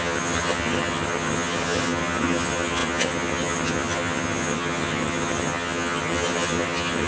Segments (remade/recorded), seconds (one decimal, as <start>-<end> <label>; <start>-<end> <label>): 0.0-7.1 remade